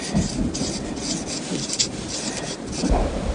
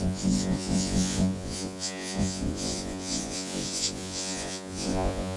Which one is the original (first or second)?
first